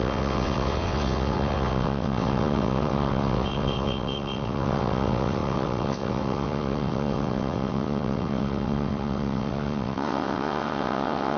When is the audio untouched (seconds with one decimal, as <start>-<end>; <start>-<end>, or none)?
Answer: none